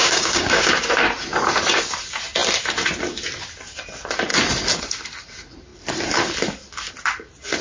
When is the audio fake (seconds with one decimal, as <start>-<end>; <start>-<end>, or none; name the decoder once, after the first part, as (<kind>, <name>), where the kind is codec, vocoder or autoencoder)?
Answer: 0.0-0.7 (codec, DAC)